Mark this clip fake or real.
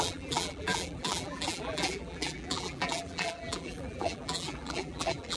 fake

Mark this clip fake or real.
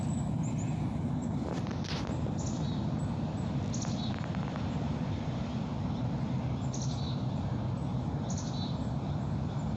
real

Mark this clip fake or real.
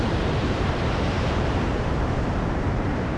fake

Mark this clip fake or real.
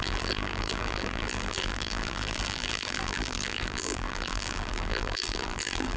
fake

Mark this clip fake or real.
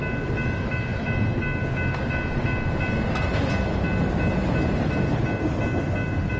real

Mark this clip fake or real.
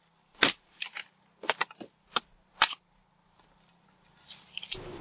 real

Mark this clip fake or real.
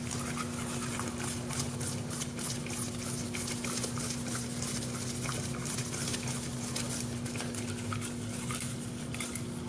real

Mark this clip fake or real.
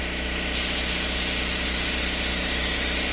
real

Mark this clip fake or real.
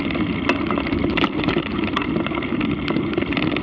real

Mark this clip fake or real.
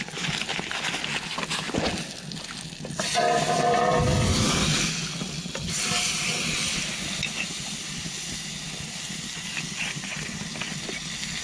real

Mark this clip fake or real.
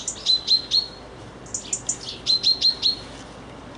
real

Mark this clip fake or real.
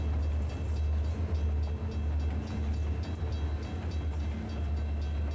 real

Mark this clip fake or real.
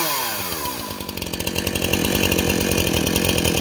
real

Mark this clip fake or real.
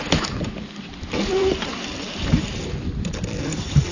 fake